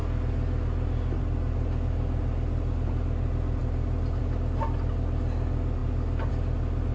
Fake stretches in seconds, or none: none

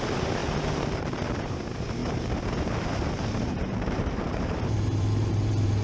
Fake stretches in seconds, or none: 0.0-0.4 (vocoder, BigVGAN v2); 1.0-5.8

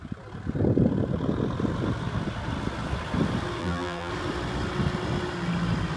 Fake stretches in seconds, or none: 3.6-4.1 (vocoder, BigVGAN v2)

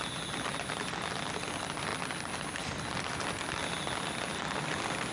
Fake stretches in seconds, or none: none

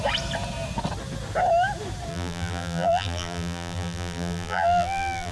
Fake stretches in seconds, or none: 2.1-5.3 (vocoder, BigVGAN v2)

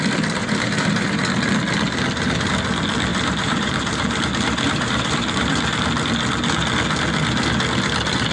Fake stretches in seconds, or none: 0.4-1.1 (vocoder, BigVGAN v2); 3.1-5.5